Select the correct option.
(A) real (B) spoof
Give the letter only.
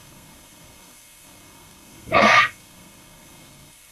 B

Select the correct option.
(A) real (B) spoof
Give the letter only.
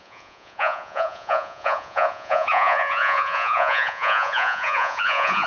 B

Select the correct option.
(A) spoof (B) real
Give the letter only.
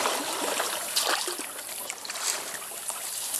B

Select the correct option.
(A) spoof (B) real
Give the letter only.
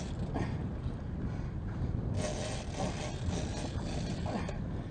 B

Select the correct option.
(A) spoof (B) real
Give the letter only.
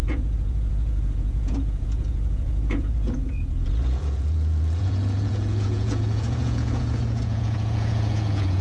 A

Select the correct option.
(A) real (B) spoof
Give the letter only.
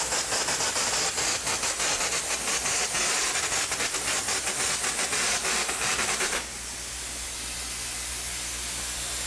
A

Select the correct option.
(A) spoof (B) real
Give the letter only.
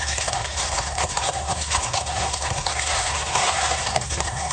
A